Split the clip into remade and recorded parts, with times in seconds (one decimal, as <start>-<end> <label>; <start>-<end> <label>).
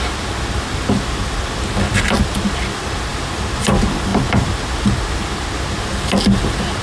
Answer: 0.0-6.8 recorded